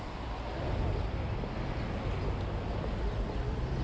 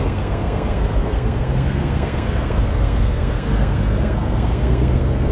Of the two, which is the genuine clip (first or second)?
first